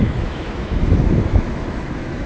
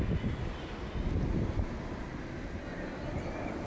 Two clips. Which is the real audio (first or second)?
second